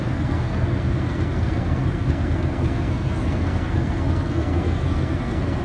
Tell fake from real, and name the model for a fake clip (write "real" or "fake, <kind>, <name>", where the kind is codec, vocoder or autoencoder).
fake, codec, SNAC